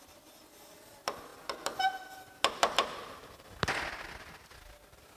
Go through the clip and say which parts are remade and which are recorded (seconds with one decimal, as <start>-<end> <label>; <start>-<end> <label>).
0.0-5.2 recorded